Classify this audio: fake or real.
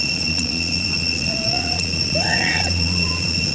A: fake